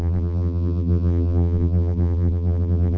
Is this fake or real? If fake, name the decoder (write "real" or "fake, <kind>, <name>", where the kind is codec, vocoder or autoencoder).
fake, vocoder, BigVGAN v2